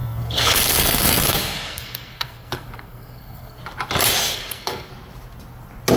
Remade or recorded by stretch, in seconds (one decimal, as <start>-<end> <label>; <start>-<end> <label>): 0.0-3.6 remade; 3.6-4.2 recorded; 4.2-4.9 remade; 4.9-6.0 recorded